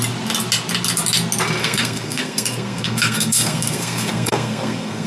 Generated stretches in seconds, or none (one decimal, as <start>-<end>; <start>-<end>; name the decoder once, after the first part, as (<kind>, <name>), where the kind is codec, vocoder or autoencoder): 1.6-5.1 (codec, SNAC)